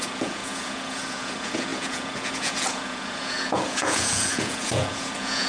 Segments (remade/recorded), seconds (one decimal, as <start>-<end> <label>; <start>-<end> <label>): 0.0-5.5 remade